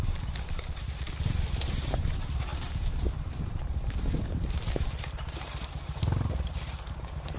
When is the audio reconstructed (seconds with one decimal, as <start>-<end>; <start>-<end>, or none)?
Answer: 0.0-7.4